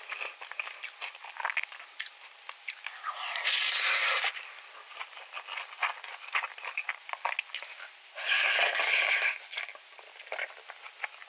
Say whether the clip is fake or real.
real